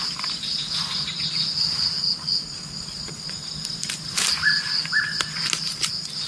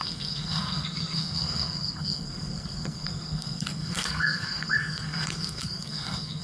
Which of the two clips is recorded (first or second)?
first